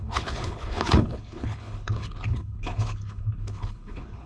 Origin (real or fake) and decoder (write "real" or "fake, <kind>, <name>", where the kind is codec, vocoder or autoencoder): fake, codec, HILCodec